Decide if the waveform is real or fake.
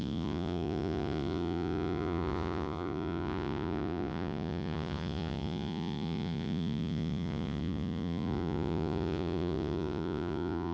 fake